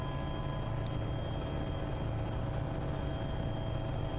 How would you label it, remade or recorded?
recorded